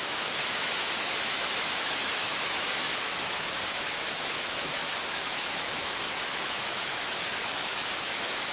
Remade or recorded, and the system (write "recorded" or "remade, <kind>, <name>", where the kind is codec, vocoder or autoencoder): remade, autoencoder, DAC-VAE